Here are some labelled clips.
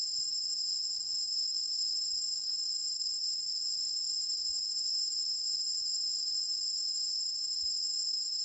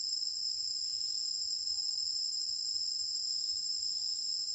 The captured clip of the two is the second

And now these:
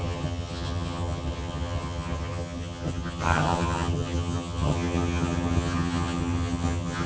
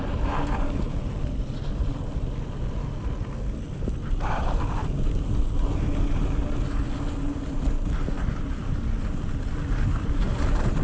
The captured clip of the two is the second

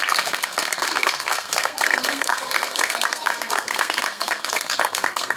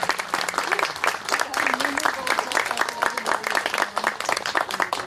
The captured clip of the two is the second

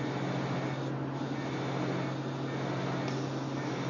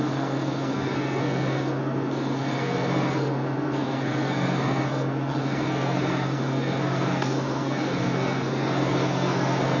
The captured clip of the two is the first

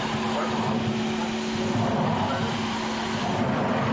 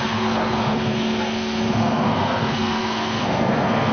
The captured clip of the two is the first